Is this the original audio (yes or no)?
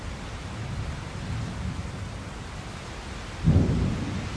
yes